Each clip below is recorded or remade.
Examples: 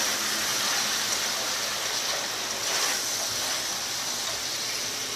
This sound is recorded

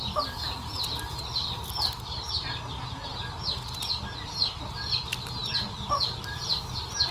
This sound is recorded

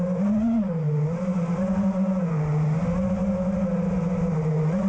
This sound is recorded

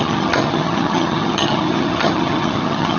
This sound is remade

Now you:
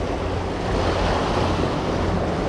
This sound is recorded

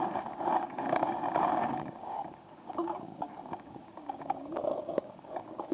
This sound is remade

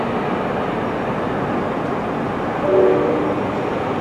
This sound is recorded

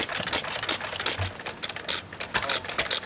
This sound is recorded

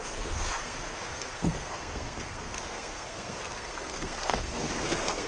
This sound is remade